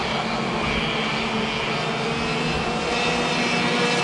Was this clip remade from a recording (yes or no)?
no